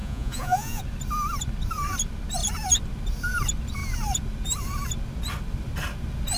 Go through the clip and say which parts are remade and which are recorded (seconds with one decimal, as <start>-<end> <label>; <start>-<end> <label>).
0.0-0.8 remade; 0.8-6.4 recorded